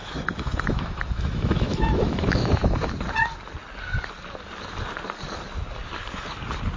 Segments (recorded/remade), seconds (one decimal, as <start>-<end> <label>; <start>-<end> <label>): 0.0-2.9 remade; 2.9-6.8 recorded